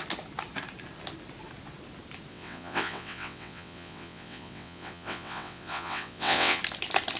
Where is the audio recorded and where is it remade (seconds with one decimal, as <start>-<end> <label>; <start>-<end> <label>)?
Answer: 0.0-2.3 recorded; 2.3-6.6 remade; 6.6-7.2 recorded